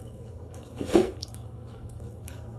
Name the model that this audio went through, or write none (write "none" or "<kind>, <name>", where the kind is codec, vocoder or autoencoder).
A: codec, SNAC